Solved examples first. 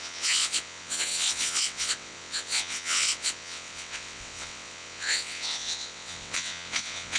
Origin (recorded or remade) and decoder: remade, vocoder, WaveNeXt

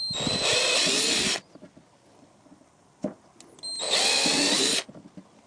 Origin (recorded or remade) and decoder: recorded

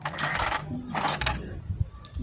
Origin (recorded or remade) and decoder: recorded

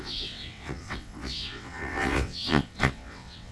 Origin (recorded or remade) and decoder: remade, vocoder, WaveNeXt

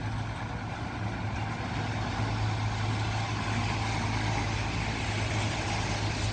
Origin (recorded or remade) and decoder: recorded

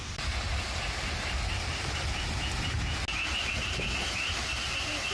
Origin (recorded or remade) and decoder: recorded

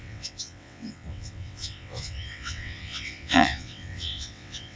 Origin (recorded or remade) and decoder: remade, vocoder, WaveNeXt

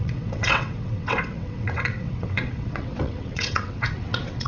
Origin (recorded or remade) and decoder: remade, vocoder, WaveNeXt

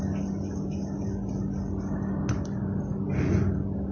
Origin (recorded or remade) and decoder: recorded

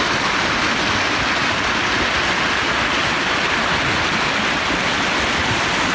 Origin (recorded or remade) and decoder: recorded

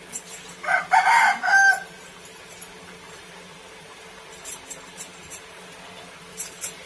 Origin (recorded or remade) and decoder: recorded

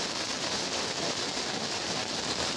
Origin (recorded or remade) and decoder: recorded